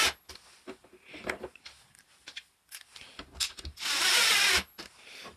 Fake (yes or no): no